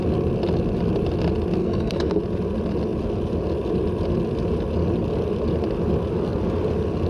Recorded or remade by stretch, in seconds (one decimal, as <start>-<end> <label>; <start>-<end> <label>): 0.0-1.6 recorded; 1.6-2.2 remade; 2.2-7.1 recorded